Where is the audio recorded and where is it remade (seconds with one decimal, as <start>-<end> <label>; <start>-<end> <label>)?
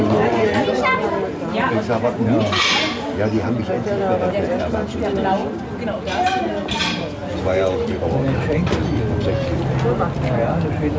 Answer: 0.0-11.0 recorded